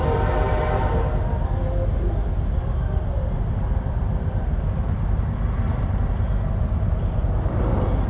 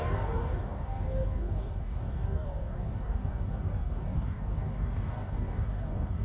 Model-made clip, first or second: second